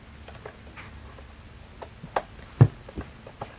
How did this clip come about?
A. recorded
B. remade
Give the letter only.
A